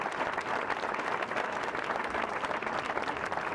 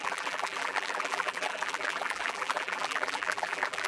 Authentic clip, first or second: first